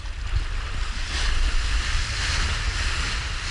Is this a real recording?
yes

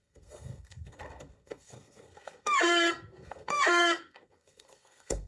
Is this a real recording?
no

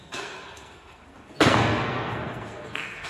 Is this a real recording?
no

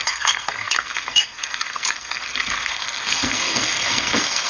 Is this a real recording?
no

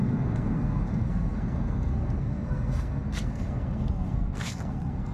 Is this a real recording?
no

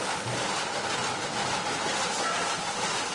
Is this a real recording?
yes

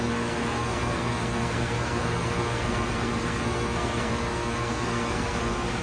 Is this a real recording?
no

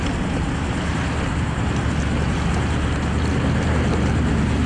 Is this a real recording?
yes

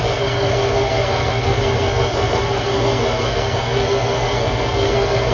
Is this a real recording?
no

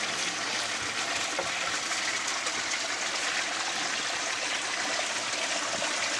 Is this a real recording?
yes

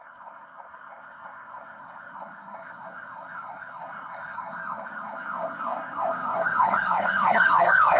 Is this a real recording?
no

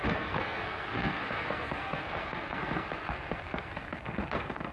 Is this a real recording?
no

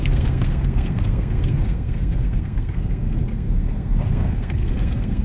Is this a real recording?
no